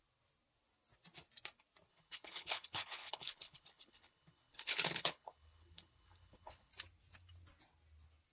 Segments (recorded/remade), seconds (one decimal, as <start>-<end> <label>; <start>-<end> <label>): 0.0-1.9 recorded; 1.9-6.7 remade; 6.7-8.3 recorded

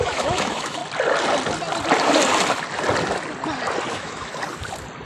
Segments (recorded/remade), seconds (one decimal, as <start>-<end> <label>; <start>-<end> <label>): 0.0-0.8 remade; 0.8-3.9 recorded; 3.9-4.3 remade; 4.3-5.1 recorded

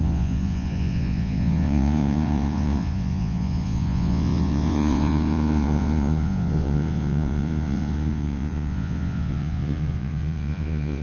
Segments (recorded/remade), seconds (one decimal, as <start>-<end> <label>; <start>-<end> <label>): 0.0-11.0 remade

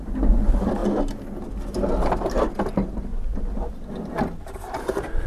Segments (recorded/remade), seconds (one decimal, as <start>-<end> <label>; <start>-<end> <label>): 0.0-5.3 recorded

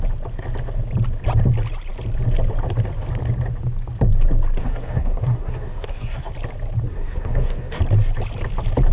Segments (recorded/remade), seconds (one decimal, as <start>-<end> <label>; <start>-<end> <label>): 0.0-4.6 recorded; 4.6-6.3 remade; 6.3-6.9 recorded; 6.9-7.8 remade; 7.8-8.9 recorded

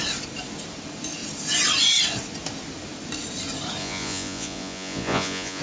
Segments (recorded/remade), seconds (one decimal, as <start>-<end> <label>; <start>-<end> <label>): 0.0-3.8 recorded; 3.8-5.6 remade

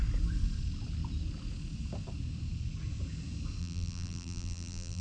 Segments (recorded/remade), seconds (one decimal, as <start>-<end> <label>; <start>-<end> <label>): 0.0-3.6 recorded; 3.6-5.0 remade

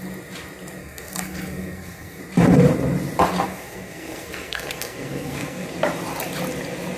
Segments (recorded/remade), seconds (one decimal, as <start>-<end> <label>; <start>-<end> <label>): 0.0-0.8 recorded; 0.8-2.2 remade; 2.2-3.5 recorded; 3.5-5.7 remade; 5.7-7.0 recorded